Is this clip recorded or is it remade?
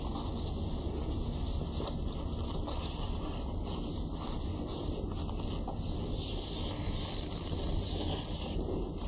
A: recorded